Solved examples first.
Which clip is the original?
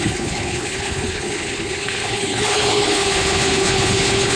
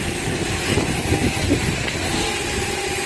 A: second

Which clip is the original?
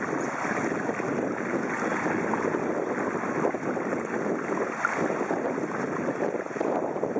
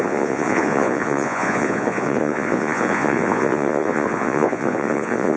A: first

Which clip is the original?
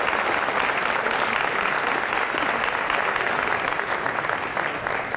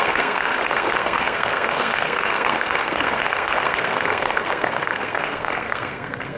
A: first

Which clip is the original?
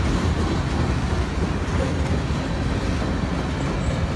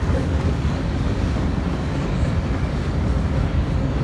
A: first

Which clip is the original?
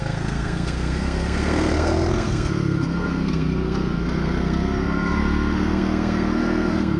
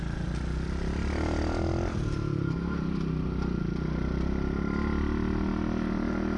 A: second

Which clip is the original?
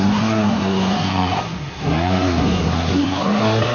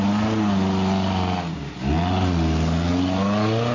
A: second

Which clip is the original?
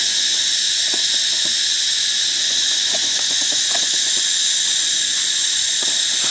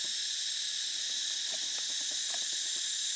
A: second